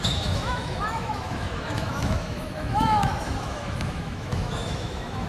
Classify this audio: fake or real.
fake